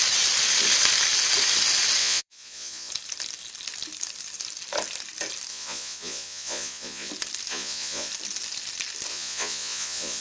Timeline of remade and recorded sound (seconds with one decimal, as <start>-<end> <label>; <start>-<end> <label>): 0.0-2.0 recorded; 2.0-2.9 remade; 2.9-5.5 recorded; 5.5-7.1 remade; 7.1-7.5 recorded; 7.5-8.1 remade; 8.1-9.1 recorded; 9.1-10.2 remade